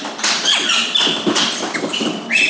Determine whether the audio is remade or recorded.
recorded